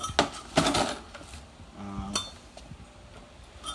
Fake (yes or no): no